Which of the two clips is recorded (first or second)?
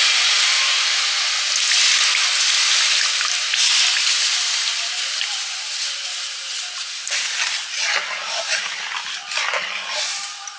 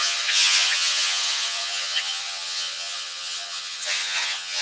first